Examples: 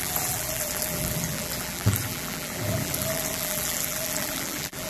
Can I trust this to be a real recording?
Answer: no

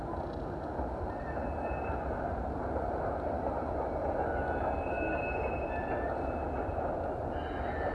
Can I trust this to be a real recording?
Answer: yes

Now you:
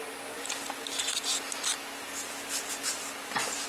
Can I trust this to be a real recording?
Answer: yes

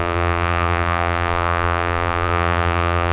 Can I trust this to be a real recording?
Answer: no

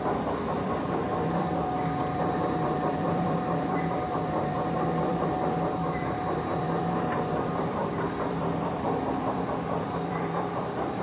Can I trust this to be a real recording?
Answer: no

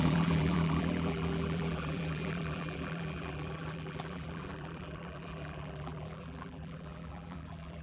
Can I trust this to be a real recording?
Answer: no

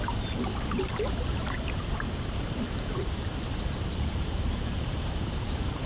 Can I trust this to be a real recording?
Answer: no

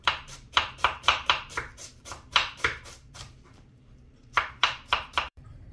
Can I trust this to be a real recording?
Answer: no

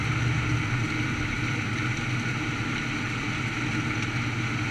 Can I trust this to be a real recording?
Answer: yes